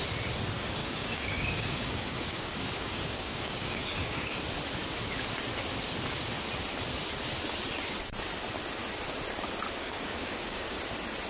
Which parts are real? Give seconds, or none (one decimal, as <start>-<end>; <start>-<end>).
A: 0.0-0.8; 4.4-9.8; 10.8-11.3

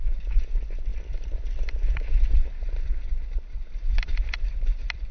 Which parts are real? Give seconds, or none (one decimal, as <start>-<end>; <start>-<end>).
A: 0.0-5.1

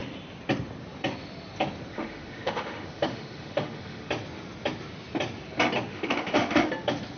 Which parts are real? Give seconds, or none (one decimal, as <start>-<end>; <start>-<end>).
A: 0.0-1.9; 4.1-5.9; 6.7-7.2

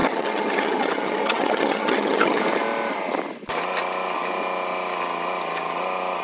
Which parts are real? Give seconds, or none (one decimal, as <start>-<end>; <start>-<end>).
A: 2.4-6.2